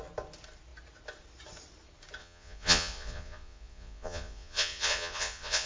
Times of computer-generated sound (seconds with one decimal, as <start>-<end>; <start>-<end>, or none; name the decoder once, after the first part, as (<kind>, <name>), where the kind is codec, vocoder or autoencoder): 2.2-5.7 (vocoder, Vocos)